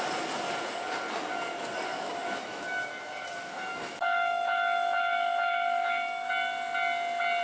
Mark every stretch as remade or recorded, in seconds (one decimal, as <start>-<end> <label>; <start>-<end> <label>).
0.0-1.9 recorded; 1.9-6.3 remade; 6.3-7.4 recorded